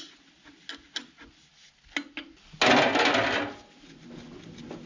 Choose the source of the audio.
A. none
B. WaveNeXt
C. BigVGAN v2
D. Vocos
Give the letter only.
A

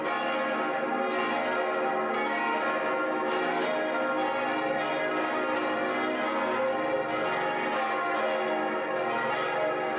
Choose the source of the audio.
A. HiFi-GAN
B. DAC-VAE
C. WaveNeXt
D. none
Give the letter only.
D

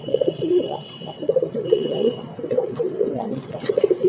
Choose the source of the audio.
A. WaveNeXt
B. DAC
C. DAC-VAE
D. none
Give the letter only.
A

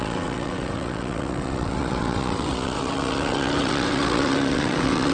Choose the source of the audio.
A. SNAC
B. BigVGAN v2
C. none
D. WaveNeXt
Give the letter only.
D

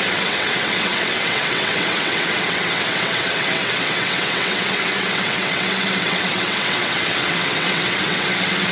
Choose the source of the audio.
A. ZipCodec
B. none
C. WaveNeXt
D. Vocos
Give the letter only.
C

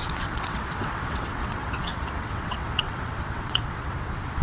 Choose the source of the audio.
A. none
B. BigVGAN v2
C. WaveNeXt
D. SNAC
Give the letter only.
C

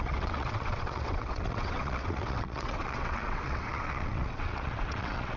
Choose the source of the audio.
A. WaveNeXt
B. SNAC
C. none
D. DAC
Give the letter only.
A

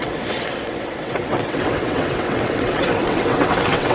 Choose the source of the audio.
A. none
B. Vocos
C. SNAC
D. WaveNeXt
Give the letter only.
D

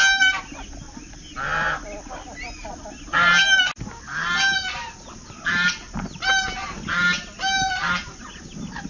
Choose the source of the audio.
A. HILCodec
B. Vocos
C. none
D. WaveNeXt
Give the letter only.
C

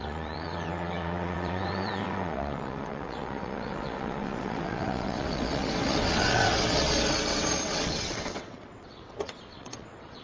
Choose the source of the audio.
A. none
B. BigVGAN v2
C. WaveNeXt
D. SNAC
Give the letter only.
C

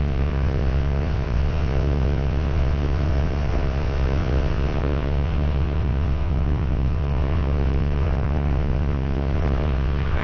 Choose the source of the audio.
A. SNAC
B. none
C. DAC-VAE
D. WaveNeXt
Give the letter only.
D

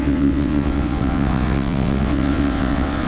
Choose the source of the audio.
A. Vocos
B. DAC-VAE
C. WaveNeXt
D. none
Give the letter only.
C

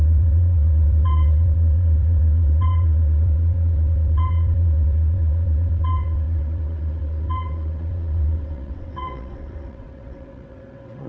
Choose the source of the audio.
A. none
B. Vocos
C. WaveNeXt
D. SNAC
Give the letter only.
C